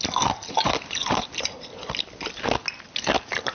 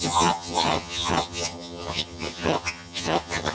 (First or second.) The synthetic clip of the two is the second